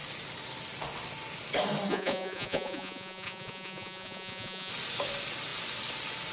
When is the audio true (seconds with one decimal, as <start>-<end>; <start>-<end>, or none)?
0.0-1.9; 4.7-6.3

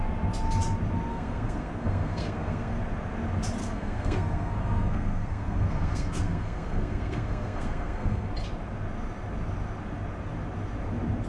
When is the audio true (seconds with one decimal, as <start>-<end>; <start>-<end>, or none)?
0.0-1.1; 2.8-3.6; 8.3-11.3

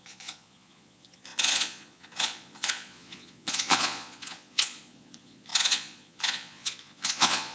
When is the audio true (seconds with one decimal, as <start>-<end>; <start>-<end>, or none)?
none

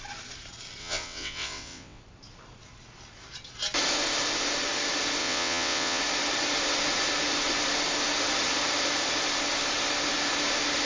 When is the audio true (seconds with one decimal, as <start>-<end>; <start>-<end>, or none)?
0.0-0.8; 2.0-5.2; 6.0-10.9

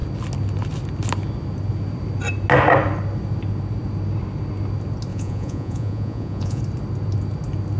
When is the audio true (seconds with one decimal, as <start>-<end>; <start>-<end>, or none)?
0.0-5.1; 6.6-7.8